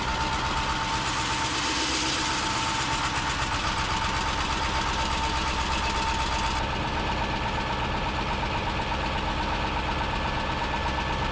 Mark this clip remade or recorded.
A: recorded